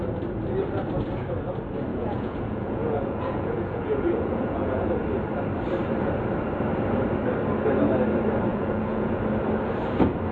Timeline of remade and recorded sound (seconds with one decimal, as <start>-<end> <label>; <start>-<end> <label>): 0.0-1.9 recorded; 1.9-4.9 remade; 4.9-8.5 recorded; 8.5-9.2 remade; 9.2-10.3 recorded